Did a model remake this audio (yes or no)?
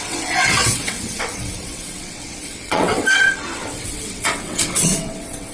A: yes